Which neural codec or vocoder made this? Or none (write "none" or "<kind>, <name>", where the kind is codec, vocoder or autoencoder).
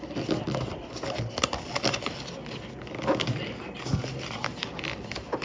none